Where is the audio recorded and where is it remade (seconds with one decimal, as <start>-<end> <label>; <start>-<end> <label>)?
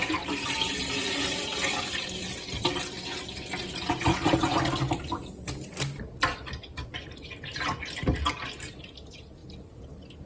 0.0-10.3 recorded